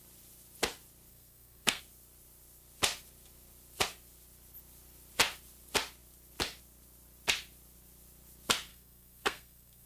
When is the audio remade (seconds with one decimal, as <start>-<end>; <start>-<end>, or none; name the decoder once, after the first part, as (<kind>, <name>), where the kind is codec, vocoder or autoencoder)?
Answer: 1.1-1.8 (codec, SNAC); 8.7-9.9